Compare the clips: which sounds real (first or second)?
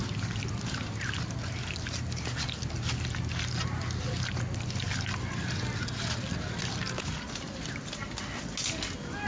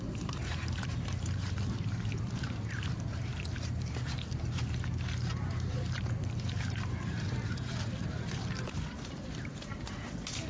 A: first